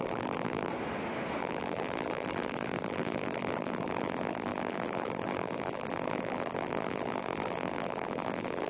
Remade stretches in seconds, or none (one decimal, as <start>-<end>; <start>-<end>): 0.0-0.7; 1.4-8.7

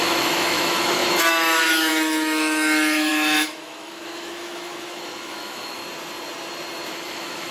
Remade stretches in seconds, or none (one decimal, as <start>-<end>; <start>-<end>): 0.0-5.8; 6.9-7.5

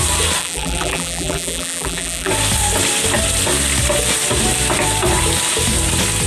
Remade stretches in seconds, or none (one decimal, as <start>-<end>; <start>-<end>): 0.4-2.3